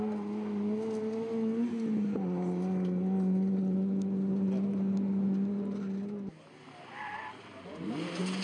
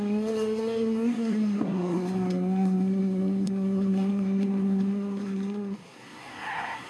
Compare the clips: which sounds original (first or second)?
first